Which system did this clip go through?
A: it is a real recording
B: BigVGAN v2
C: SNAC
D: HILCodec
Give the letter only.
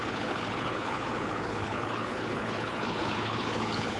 D